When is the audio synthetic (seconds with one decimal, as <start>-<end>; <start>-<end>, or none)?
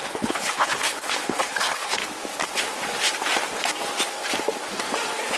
0.0-2.0